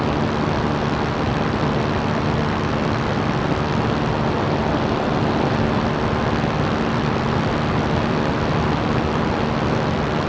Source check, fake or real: real